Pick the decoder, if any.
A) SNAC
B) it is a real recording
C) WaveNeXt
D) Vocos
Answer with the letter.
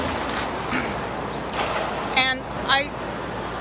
B